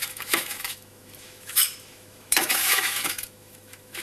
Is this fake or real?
fake